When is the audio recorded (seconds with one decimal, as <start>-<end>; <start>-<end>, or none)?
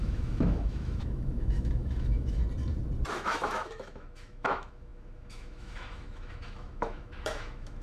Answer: 2.4-3.1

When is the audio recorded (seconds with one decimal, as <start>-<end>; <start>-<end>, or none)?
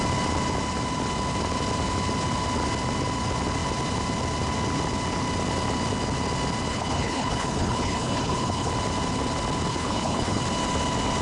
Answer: 0.0-6.7; 8.7-9.7; 10.4-11.2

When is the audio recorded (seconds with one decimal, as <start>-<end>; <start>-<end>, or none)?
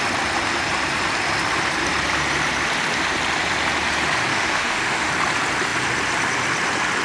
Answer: 0.0-4.3; 5.1-7.0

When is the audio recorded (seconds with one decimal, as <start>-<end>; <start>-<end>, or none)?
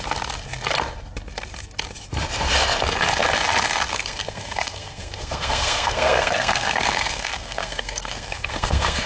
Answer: 0.0-3.9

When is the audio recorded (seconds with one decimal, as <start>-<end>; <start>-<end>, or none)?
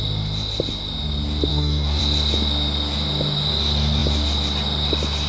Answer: 0.0-1.5; 2.0-5.3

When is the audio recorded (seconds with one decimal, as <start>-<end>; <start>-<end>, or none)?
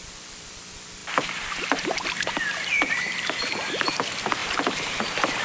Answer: none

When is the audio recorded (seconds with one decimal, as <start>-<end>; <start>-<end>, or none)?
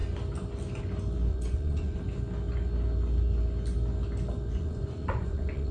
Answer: 0.0-1.3; 2.0-4.5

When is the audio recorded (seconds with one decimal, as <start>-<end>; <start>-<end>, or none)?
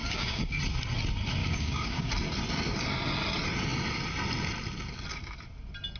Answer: 0.6-1.4; 2.1-6.0